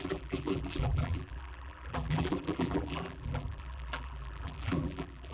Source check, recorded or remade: remade